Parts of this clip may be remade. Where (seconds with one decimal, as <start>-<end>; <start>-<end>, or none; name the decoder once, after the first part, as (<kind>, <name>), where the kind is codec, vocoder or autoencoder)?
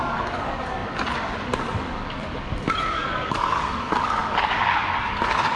0.0-5.6 (codec, DAC)